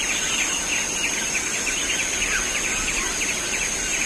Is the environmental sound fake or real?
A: real